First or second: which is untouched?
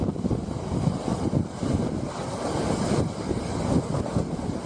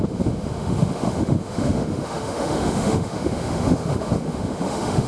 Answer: first